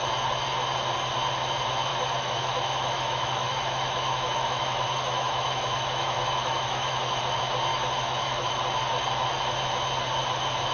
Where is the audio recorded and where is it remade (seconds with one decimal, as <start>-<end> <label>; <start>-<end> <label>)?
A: 0.0-1.9 recorded; 1.9-7.2 remade; 7.2-7.7 recorded; 7.7-8.5 remade; 8.5-10.7 recorded